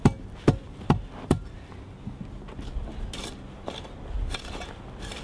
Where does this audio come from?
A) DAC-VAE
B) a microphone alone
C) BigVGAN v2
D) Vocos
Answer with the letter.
B